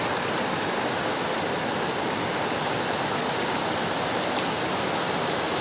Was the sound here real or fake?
real